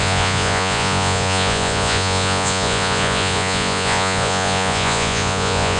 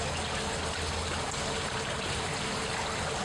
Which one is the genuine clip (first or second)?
second